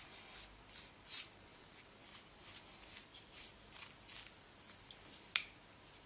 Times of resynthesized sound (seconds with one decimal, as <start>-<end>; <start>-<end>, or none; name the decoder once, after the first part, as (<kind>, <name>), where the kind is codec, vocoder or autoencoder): 3.1-3.7 (vocoder, BigVGAN v2)